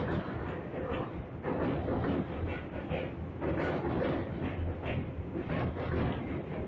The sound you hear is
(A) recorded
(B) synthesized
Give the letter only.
A